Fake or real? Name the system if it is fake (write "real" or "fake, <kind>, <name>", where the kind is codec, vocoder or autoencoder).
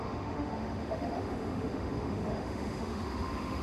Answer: fake, autoencoder, DAC-VAE